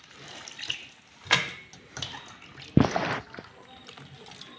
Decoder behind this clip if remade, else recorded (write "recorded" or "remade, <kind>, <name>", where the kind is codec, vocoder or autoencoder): recorded